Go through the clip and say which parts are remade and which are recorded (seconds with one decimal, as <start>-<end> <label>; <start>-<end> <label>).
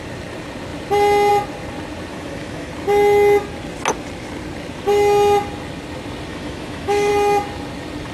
0.0-2.1 recorded; 2.1-2.7 remade; 2.7-6.3 recorded; 6.3-7.1 remade; 7.1-8.1 recorded